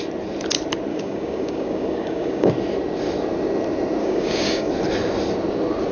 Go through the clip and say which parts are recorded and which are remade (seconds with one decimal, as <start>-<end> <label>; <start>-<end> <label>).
0.0-0.9 recorded; 0.9-2.5 remade; 2.5-4.0 recorded; 4.0-4.7 remade; 4.7-5.9 recorded